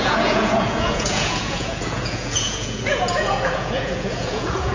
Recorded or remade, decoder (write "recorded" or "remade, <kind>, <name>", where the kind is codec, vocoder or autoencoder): remade, vocoder, Vocos